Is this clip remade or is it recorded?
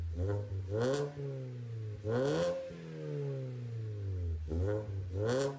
recorded